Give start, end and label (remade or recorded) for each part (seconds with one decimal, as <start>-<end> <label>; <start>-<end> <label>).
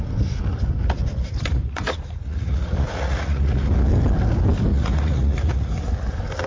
0.0-1.5 recorded; 1.5-3.7 remade; 3.7-4.7 recorded; 4.7-5.7 remade; 5.7-6.5 recorded